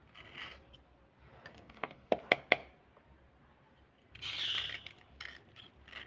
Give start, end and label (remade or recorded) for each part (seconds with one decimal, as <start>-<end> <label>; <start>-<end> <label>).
0.0-1.5 recorded; 1.5-2.1 remade; 2.1-6.1 recorded